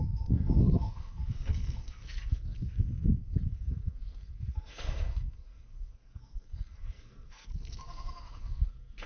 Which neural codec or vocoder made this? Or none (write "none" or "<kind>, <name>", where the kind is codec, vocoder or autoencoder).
codec, SNAC